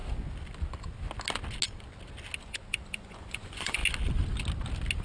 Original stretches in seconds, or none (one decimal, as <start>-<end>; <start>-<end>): 0.0-2.4; 3.8-5.0